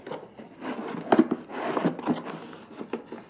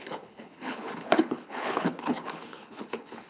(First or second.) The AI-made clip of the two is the second